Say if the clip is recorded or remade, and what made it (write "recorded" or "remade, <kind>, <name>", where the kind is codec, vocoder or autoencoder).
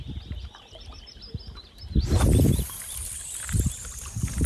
recorded